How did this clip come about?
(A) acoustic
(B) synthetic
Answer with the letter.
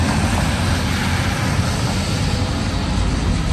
A